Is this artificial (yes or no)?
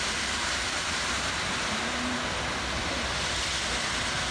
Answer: no